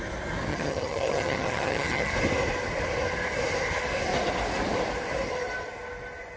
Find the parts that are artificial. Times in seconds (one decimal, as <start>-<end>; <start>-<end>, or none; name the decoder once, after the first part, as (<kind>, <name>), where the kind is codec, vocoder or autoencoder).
0.5-2.1 (vocoder, HiFi-GAN)